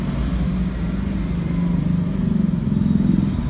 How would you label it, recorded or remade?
recorded